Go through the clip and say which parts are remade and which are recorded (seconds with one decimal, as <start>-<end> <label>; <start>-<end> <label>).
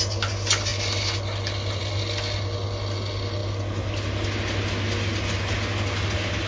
0.0-6.5 recorded